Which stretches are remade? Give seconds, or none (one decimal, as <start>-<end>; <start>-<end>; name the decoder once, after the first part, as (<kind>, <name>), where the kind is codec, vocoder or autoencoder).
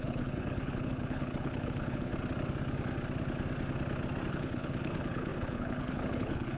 0.0-2.1 (codec, HILCodec); 4.3-6.6